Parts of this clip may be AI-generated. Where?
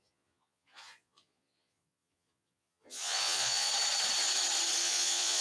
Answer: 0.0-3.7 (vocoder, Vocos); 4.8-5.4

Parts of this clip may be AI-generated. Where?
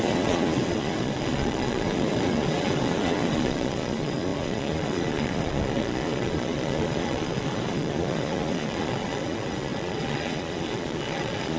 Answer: 0.0-11.6 (vocoder, Vocos)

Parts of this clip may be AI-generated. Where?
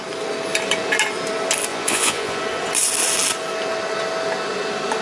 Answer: 1.7-2.4 (vocoder, Vocos)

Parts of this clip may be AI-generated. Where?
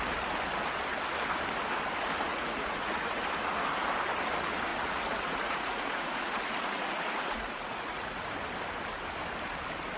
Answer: 2.3-3.2 (vocoder, Vocos); 4.7-8.3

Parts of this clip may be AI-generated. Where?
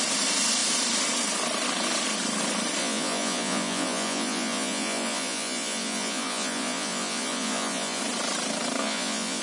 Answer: 2.8-8.0 (vocoder, Vocos); 8.8-9.4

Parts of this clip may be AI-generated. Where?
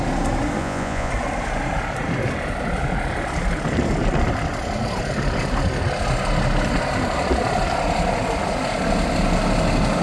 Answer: 0.6-1.1 (vocoder, Vocos)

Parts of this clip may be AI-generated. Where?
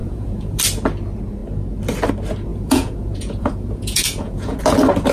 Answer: 0.0-0.6 (vocoder, Vocos); 2.5-4.6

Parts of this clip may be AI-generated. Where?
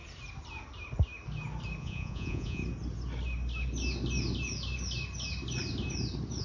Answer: 1.8-2.6 (vocoder, Vocos)